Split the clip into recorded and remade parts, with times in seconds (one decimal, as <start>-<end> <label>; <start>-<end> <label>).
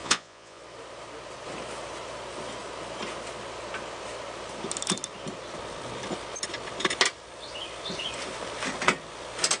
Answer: 0.0-0.6 remade; 0.6-9.6 recorded